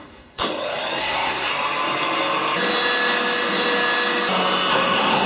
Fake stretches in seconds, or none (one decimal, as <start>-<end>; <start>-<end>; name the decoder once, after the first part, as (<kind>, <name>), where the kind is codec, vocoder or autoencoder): 0.0-0.4 (codec, SNAC); 1.0-1.5; 4.7-5.3